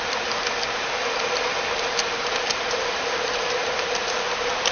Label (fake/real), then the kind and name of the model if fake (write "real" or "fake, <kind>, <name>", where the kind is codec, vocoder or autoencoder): real